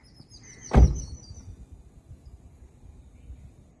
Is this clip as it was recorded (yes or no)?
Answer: yes